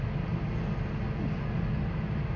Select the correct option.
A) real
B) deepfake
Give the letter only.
A